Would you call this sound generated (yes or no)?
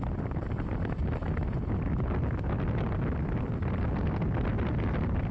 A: no